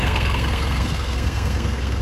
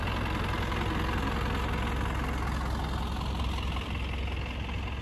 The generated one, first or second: first